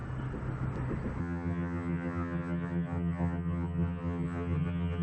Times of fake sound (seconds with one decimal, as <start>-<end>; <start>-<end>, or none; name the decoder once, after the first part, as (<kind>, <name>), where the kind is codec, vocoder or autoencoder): 1.2-5.0 (vocoder, HiFi-GAN)